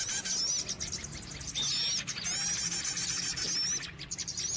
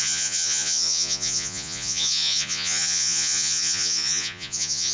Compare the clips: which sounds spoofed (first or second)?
second